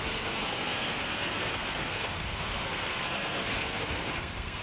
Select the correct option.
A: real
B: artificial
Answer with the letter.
B